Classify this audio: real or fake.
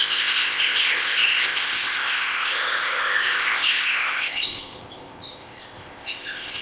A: fake